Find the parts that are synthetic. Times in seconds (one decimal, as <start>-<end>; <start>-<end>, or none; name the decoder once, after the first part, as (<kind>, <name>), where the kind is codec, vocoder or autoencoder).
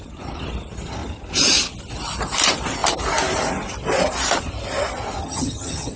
5.2-6.0 (vocoder, HiFi-GAN)